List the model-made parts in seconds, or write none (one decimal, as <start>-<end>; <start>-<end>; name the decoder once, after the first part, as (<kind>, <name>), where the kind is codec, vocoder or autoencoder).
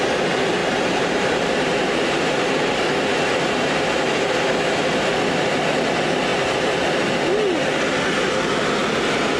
0.6-4.3 (vocoder, BigVGAN v2); 6.3-7.1